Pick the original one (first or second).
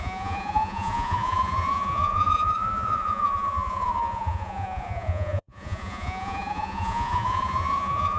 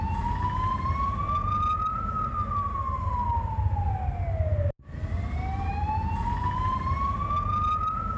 second